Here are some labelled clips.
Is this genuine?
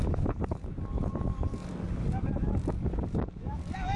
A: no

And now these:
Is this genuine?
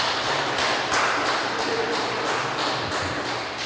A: yes